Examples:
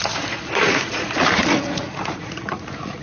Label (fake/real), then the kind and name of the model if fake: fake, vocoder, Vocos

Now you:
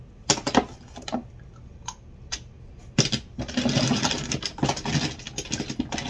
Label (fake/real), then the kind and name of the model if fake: real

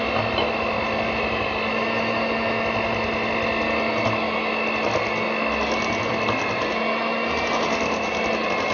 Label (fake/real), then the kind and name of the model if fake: real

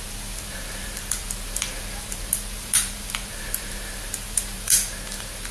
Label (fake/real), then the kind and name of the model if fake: fake, vocoder, BigVGAN v2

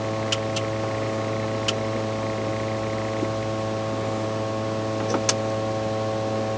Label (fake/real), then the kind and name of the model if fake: real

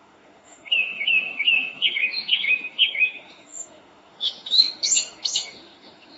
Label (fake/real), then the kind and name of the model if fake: fake, autoencoder, DAC-VAE